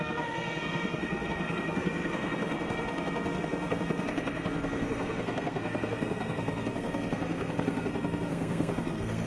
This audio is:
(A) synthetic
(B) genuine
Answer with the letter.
A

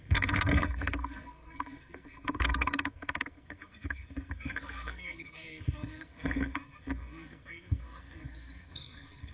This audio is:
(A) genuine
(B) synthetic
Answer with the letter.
B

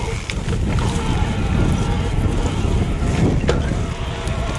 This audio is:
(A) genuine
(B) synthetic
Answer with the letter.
A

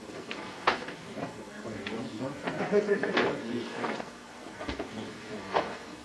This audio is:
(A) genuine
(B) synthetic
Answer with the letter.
B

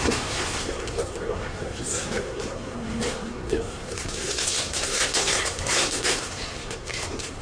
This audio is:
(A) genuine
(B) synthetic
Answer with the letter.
B